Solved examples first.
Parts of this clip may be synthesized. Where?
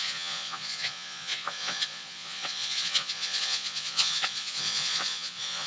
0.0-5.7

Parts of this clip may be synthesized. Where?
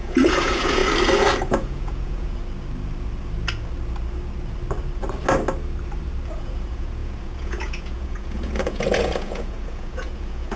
0.0-0.8; 1.5-2.4; 6.3-10.6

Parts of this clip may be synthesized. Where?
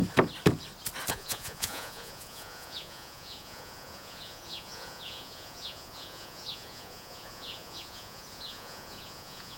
1.1-9.6